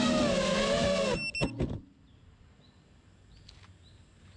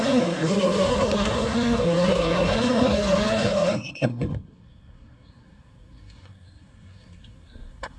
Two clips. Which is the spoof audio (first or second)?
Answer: second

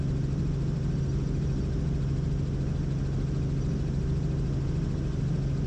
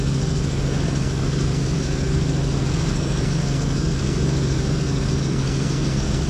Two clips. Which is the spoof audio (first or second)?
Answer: second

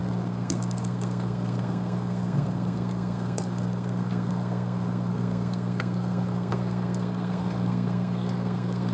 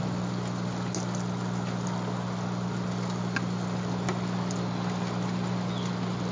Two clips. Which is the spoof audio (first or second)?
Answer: first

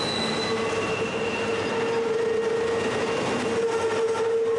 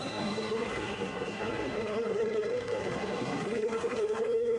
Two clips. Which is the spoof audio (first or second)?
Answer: second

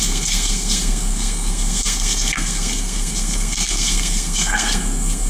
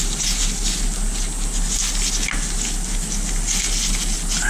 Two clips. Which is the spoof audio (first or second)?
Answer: first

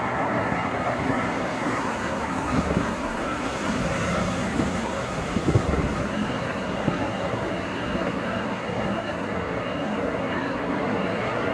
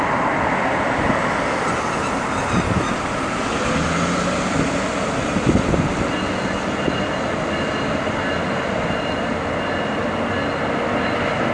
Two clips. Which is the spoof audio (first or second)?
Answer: first